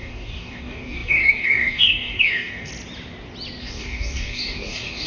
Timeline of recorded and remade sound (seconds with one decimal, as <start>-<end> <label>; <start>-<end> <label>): 0.0-2.7 remade; 2.7-3.6 recorded; 3.6-5.1 remade